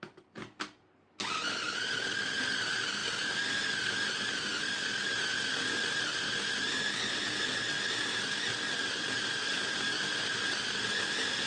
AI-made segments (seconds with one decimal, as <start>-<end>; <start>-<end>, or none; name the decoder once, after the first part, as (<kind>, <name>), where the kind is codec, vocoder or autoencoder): none